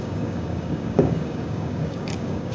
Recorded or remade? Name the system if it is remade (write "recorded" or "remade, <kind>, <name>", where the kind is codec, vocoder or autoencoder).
remade, codec, DAC